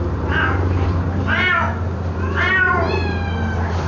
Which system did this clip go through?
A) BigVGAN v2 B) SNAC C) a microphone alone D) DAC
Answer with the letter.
C